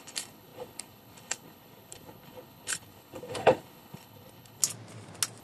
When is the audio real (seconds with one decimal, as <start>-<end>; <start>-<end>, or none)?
4.6-5.4